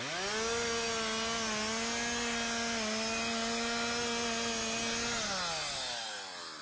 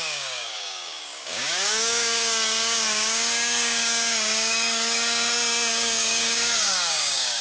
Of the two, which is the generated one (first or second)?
second